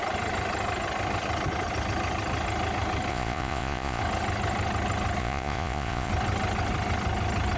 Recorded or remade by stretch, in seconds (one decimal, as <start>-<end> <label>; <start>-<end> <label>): 0.0-3.1 recorded; 3.1-4.0 remade; 4.0-5.2 recorded; 5.2-6.1 remade; 6.1-7.6 recorded